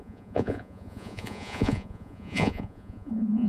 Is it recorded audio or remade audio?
remade